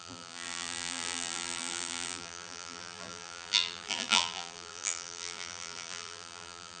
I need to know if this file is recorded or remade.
remade